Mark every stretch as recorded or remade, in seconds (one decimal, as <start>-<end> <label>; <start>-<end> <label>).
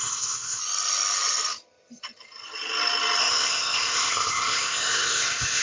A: 0.0-0.6 remade; 0.6-3.2 recorded; 3.2-5.6 remade